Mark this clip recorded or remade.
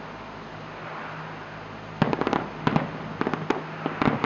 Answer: recorded